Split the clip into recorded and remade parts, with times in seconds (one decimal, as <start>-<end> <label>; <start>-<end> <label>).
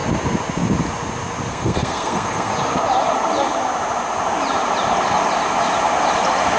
0.0-1.5 recorded; 1.5-2.5 remade; 2.5-6.6 recorded